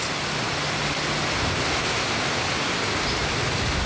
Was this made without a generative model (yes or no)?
yes